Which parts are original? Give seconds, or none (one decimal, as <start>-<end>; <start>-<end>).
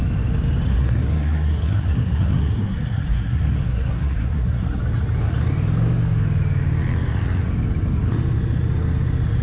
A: 0.0-0.7; 4.8-9.4